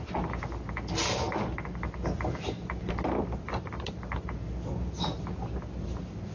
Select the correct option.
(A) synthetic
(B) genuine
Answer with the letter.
B